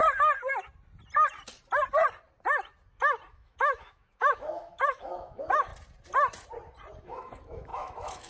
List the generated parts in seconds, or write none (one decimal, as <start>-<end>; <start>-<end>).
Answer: 3.3-5.7; 7.0-8.3